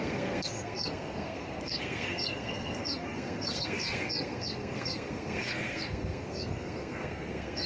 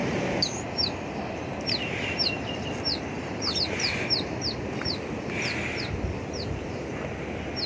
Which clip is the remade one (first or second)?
first